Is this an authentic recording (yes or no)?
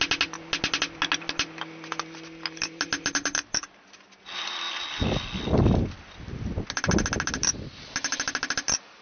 yes